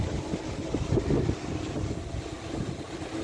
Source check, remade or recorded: recorded